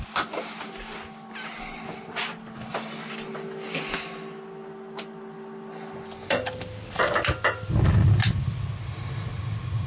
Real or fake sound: real